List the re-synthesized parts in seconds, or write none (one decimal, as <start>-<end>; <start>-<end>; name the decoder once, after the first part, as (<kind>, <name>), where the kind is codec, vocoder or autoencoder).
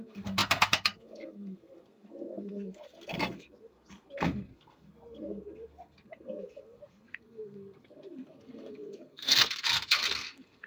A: 0.0-10.7 (codec, SNAC)